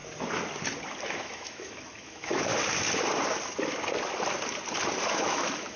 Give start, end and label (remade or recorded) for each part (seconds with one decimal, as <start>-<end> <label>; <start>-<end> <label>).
0.0-1.1 recorded; 1.1-2.5 remade; 2.5-5.1 recorded; 5.1-5.8 remade